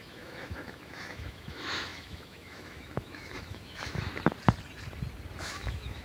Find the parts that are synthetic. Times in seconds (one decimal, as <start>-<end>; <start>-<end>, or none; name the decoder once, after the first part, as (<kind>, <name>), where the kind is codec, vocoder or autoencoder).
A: 0.0-4.1 (autoencoder, DAC-VAE); 5.4-6.0

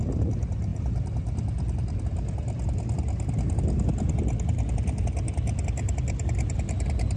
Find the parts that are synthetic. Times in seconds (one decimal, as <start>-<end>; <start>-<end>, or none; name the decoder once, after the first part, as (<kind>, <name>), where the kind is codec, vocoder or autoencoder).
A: 0.7-2.0 (vocoder, BigVGAN v2)

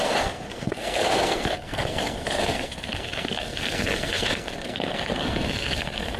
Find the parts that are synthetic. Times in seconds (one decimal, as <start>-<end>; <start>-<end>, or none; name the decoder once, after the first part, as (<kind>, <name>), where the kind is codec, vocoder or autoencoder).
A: 0.0-6.2 (codec, SNAC)

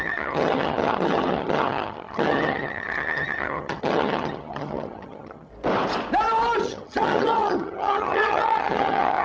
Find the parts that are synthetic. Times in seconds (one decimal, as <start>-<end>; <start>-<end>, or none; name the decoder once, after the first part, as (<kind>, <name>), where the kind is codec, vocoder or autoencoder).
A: 0.0-5.5 (vocoder, HiFi-GAN); 6.6-9.2

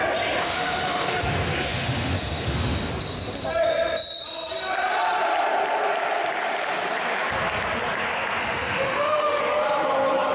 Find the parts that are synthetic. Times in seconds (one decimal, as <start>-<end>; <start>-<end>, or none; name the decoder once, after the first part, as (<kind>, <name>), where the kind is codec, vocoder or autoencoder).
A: 0.4-2.9 (autoencoder, DAC-VAE); 8.4-9.4

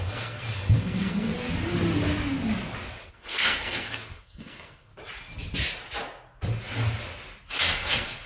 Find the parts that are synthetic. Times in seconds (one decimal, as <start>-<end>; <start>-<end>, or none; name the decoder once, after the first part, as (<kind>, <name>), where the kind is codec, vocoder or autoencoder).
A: 0.0-1.3 (codec, SNAC); 3.1-4.9; 7.5-8.3

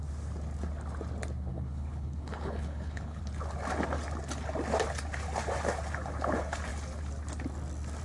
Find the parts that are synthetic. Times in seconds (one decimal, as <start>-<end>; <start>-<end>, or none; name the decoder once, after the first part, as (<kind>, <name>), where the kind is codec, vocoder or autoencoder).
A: 1.5-3.2 (codec, HILCodec)

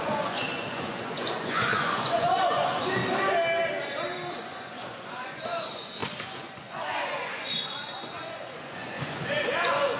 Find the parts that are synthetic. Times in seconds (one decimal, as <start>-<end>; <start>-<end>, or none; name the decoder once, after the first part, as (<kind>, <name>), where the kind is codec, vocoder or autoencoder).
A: 0.0-3.0 (vocoder, Vocos); 4.3-10.0